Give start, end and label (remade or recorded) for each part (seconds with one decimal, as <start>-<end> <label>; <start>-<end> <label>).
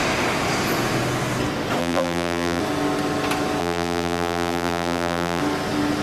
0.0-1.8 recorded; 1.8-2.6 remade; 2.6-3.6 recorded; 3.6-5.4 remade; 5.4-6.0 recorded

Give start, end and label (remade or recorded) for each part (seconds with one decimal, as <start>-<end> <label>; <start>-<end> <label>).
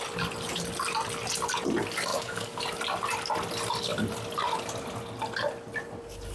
0.0-2.1 recorded; 2.1-2.6 remade; 2.6-6.3 recorded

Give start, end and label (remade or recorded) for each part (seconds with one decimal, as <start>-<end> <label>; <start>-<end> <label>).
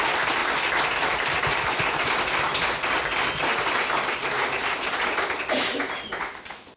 0.0-6.8 remade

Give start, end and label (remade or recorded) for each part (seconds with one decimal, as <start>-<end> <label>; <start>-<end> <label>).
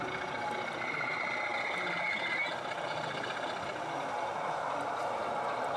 0.0-5.8 recorded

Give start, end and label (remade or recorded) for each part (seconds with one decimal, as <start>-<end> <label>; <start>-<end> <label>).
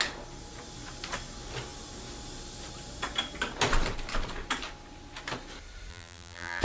0.0-5.9 recorded; 5.9-6.6 remade